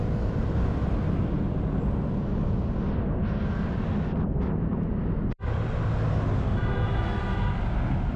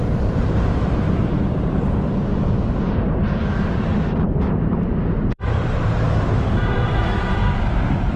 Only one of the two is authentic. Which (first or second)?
first